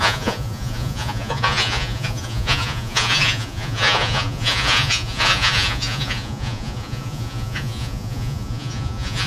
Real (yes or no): no